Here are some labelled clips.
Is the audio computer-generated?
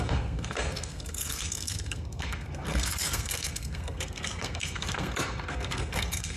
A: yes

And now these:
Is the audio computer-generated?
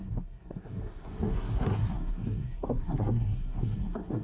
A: yes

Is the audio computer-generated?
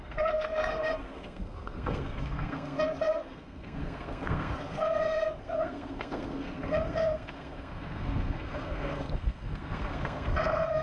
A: yes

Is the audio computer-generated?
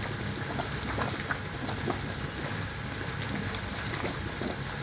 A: no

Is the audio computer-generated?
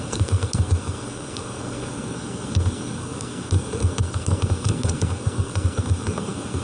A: yes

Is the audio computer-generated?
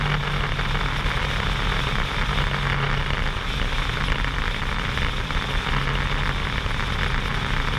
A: no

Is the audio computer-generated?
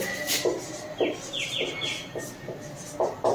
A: no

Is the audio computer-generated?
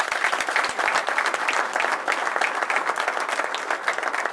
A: no